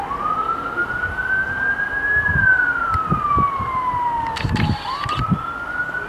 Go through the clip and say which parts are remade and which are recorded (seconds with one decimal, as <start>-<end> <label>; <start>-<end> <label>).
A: 0.0-6.1 recorded